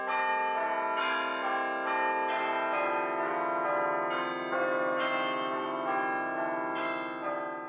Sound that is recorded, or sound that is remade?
recorded